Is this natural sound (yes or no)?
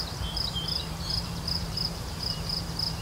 no